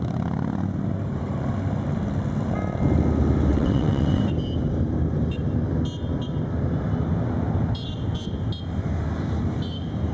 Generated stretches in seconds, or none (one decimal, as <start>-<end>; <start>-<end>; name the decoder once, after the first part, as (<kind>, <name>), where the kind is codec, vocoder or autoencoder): 3.5-4.2 (vocoder, WaveNeXt)